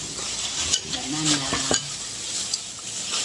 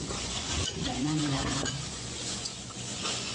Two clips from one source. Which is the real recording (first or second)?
first